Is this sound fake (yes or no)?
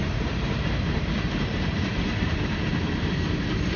yes